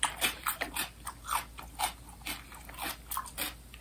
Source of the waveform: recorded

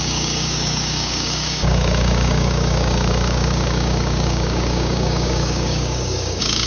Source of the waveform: remade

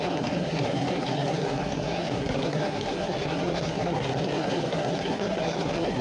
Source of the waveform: remade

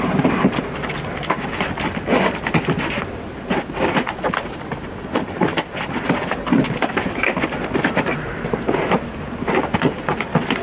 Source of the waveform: recorded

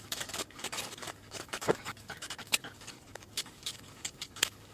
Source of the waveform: remade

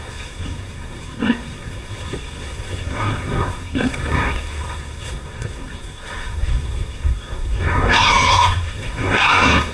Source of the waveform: remade